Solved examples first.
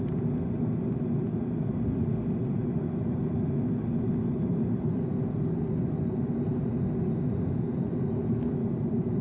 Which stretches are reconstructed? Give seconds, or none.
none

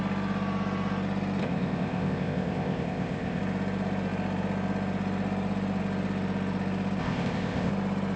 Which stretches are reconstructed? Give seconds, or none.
1.4-3.4 (codec, ZipCodec); 7.0-7.7

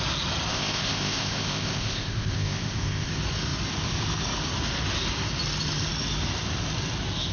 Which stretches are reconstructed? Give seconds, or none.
0.5-3.1 (codec, ZipCodec)

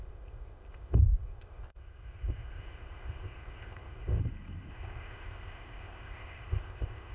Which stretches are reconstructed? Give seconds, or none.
0.0-4.2 (codec, ZipCodec); 4.7-7.1

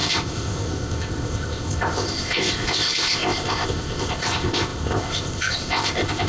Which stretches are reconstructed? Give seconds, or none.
0.0-6.3 (codec, ZipCodec)

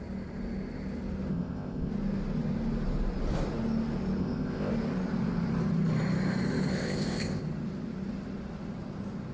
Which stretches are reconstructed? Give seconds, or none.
1.3-1.9 (codec, ZipCodec); 4.2-4.7; 6.7-7.4